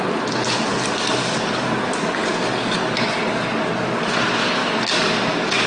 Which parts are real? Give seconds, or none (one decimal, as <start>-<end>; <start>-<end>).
0.0-0.7; 4.1-4.6